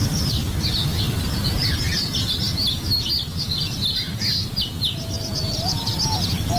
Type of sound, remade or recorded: recorded